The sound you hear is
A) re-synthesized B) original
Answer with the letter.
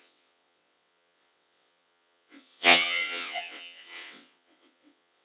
A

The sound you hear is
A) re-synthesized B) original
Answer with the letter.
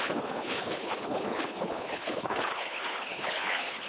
A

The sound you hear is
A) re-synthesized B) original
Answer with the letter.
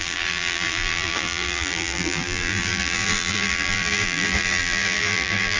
A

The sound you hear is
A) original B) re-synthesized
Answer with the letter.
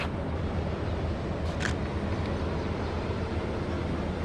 A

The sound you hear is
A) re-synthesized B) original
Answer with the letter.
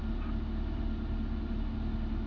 B